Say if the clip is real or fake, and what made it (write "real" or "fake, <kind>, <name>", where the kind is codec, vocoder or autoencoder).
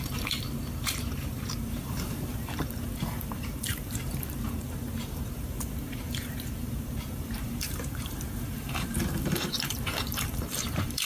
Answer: fake, vocoder, BigVGAN v2